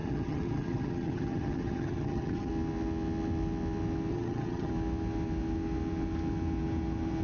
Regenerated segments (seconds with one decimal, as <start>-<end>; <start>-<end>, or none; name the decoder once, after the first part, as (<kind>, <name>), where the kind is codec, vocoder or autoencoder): 0.0-2.5 (vocoder, HiFi-GAN); 4.1-4.7